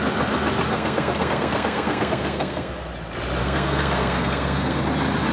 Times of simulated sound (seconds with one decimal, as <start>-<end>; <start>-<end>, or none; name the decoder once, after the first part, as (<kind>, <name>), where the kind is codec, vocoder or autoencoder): 0.7-2.7 (codec, SNAC); 3.4-4.8